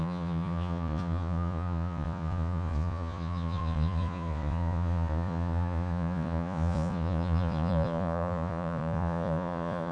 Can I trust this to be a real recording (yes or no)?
no